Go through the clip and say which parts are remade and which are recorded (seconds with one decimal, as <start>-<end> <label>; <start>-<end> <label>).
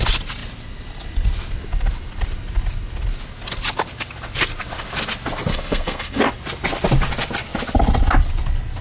0.0-5.5 recorded; 5.5-6.2 remade; 6.2-8.8 recorded